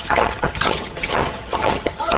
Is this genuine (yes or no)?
no